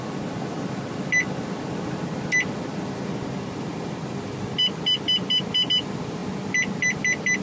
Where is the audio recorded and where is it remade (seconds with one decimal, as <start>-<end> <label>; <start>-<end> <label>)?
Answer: 0.0-7.4 recorded